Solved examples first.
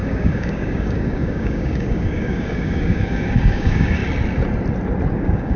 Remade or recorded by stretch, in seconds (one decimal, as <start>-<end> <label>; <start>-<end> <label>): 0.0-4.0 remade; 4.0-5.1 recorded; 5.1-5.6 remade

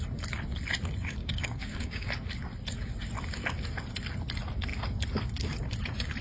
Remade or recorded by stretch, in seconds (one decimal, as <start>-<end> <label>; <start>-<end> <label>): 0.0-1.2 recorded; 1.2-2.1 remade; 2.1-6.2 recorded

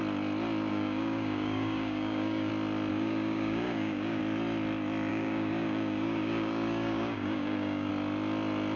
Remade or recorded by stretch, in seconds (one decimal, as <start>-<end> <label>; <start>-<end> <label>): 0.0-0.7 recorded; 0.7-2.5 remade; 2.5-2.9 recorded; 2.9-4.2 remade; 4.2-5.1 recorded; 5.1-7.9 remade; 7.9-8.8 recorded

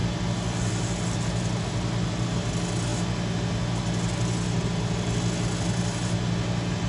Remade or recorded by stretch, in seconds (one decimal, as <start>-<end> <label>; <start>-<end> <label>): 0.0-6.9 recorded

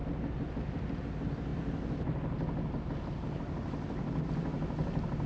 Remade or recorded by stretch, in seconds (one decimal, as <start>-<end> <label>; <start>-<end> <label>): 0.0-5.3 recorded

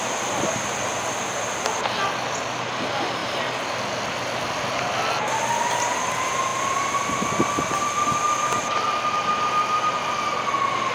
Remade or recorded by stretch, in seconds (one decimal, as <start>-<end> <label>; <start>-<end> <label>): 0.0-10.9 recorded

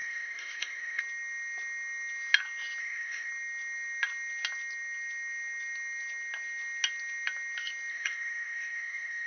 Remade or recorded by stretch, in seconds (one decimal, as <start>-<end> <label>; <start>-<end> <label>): 0.0-1.0 remade; 1.0-2.8 recorded; 2.8-3.3 remade; 3.3-7.9 recorded; 7.9-9.3 remade

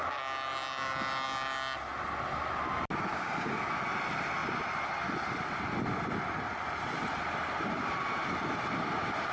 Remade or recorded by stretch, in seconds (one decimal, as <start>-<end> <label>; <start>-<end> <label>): 0.0-3.1 recorded; 3.1-3.7 remade; 3.7-9.3 recorded